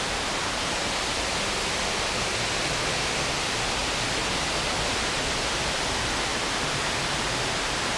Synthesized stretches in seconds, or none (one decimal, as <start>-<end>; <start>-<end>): none